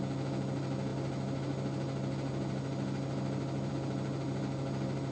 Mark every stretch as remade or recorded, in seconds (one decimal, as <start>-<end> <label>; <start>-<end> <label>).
0.0-5.1 recorded